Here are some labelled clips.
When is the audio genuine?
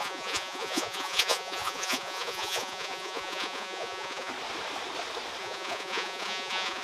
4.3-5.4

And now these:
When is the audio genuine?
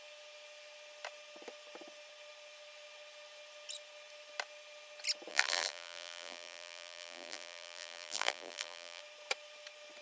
0.0-5.3; 9.0-10.0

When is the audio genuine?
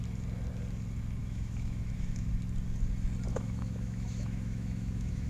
0.0-1.2; 2.3-3.3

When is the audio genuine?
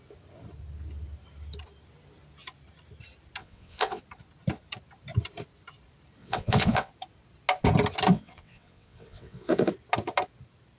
0.0-3.4; 4.0-6.2; 6.9-8.1; 9.7-10.8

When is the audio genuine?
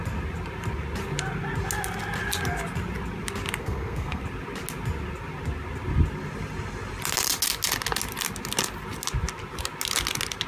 0.0-3.6; 4.2-10.5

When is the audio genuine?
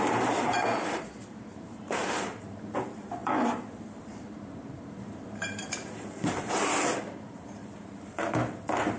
none